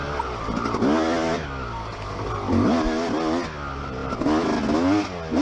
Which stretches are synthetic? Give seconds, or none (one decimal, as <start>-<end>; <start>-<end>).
none

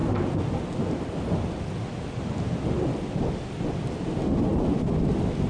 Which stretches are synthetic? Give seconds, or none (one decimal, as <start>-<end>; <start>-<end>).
4.5-5.1